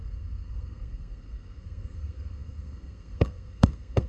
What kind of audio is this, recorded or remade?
remade